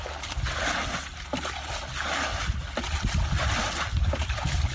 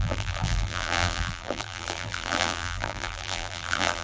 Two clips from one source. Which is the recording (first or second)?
first